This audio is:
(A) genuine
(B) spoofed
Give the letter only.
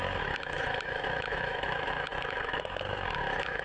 B